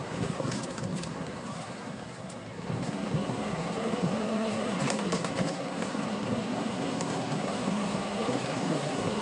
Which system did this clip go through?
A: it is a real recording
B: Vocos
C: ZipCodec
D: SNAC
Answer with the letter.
D